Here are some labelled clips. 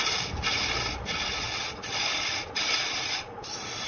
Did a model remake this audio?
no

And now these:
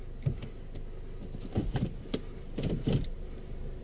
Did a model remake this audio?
no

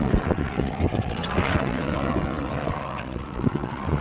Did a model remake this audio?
yes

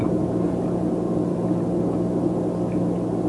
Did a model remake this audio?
no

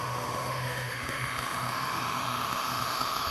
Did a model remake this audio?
yes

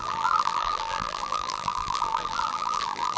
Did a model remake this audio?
yes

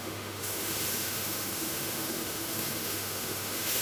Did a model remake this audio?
yes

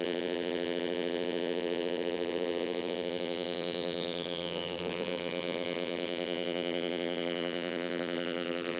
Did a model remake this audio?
yes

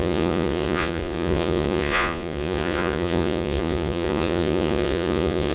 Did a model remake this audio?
yes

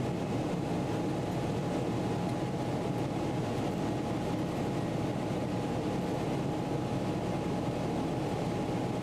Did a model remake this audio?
no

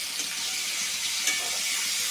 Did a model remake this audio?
no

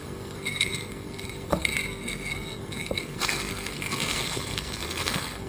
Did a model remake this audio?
yes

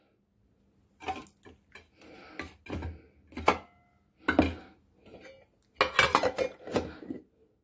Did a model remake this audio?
no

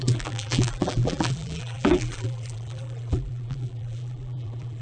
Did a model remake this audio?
yes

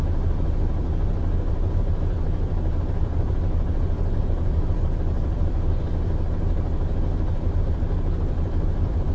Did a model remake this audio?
yes